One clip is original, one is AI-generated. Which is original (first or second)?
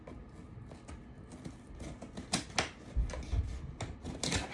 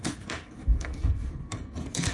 first